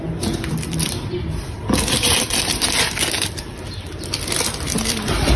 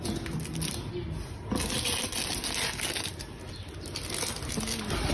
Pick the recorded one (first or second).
second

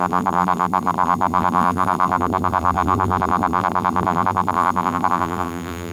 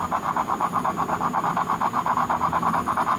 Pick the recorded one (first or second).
second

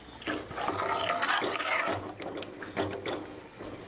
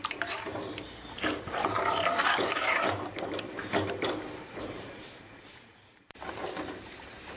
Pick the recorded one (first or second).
first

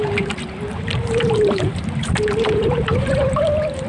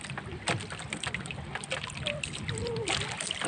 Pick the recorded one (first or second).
second